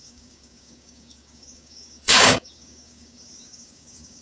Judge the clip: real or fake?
fake